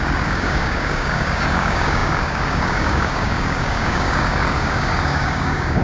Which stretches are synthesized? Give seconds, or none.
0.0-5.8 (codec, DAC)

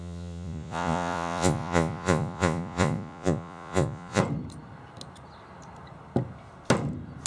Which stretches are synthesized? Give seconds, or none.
0.0-4.2 (vocoder, Vocos)